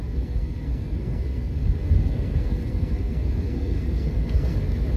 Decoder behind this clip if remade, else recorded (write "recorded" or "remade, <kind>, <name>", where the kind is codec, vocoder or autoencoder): remade, codec, SNAC